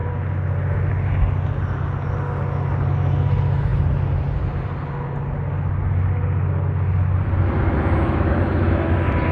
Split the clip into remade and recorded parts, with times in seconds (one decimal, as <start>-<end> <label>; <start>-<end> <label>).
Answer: 0.0-9.3 recorded